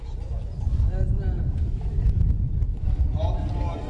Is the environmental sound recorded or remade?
recorded